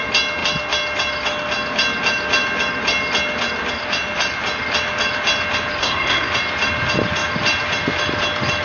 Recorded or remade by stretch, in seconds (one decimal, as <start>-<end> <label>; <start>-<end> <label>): 0.0-5.8 recorded; 5.8-6.3 remade; 6.3-8.6 recorded